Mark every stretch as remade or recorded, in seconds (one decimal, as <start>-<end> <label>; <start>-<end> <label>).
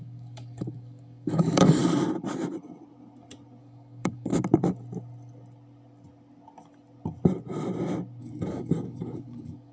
0.0-1.8 remade; 1.8-3.6 recorded; 3.6-4.3 remade; 4.3-8.2 recorded; 8.2-9.7 remade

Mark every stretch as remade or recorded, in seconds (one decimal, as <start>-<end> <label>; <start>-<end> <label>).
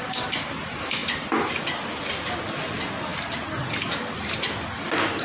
0.0-5.2 recorded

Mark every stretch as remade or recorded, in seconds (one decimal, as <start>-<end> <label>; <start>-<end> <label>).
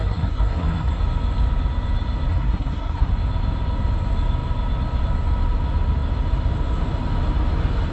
0.0-1.0 remade; 1.0-2.3 recorded; 2.3-3.1 remade; 3.1-7.9 recorded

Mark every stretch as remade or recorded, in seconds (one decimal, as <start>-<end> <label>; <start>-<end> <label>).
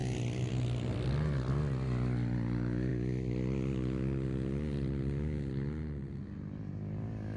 0.0-7.4 recorded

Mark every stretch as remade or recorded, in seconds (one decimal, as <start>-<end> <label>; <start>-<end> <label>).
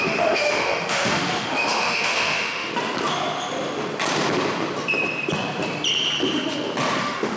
0.0-2.7 remade; 2.7-7.0 recorded; 7.0-7.4 remade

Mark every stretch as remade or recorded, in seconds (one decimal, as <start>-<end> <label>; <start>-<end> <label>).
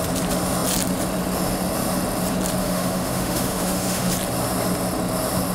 0.0-2.6 recorded; 2.6-4.1 remade; 4.1-5.5 recorded